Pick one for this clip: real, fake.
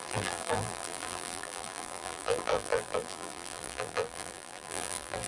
fake